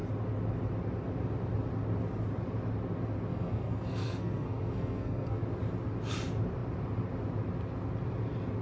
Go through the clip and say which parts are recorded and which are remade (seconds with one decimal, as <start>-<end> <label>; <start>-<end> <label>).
0.0-3.3 recorded; 3.3-5.4 remade; 5.4-8.6 recorded